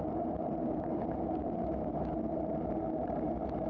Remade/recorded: remade